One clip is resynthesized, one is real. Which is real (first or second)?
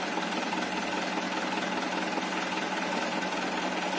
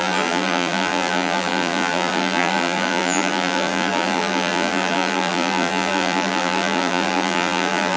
first